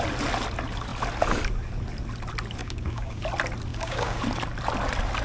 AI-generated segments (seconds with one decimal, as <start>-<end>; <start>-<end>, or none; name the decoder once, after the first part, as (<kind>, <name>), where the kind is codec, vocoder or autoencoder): 2.6-3.2 (codec, DAC); 3.7-4.2